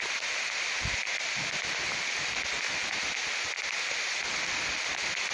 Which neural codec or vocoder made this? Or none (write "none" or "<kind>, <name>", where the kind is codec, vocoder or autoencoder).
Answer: none